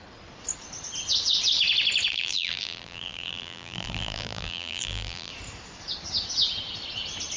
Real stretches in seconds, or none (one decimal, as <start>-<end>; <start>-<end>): 0.0-2.1; 5.3-7.4